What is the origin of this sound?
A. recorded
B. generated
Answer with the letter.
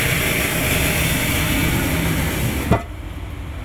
A